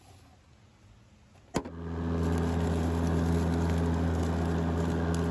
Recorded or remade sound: recorded